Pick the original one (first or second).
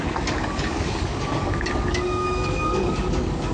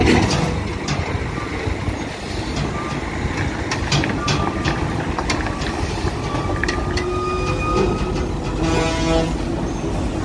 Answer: second